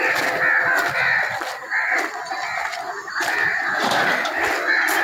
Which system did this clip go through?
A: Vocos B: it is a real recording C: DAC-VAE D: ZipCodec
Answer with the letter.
B